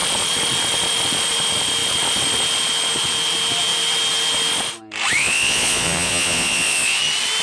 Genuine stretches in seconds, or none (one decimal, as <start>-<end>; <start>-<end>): 0.0-5.2; 7.0-7.4